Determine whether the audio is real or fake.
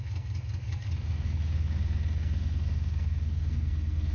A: fake